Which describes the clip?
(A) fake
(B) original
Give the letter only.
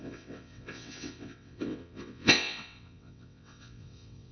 A